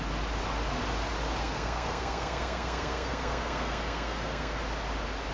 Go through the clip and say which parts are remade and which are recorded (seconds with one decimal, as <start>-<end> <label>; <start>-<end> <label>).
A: 0.0-1.4 recorded; 1.4-4.6 remade; 4.6-5.3 recorded